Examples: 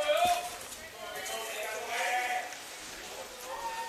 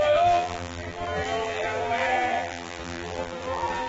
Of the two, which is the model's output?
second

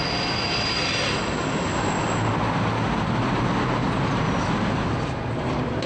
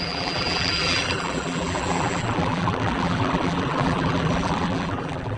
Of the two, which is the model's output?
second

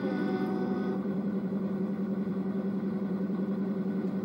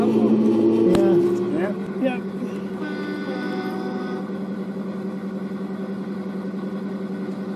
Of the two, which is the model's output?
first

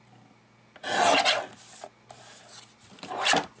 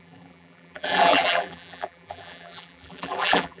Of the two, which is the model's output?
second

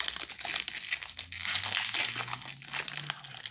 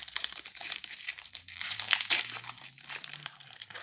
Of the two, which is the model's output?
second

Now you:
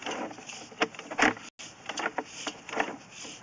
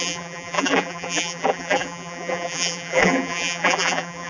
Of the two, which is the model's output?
second